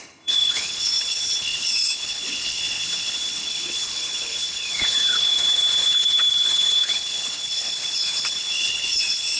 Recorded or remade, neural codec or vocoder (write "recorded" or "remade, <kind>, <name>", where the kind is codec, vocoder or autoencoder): remade, codec, HILCodec